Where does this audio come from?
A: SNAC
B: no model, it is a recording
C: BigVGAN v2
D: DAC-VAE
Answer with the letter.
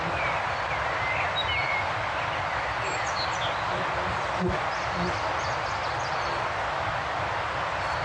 B